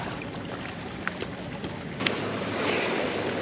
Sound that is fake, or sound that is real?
real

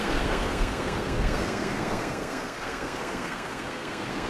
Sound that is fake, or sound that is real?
fake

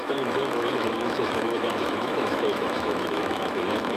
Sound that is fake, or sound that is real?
fake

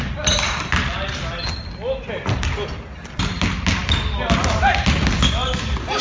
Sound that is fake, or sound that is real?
real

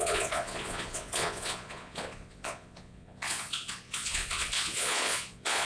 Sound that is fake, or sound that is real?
fake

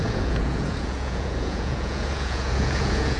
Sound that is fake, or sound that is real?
fake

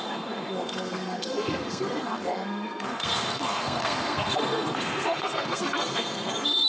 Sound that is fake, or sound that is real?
fake